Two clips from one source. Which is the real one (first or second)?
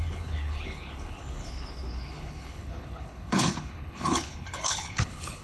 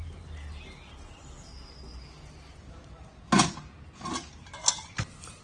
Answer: second